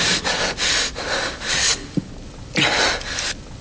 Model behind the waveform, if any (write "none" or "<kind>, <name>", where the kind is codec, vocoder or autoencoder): none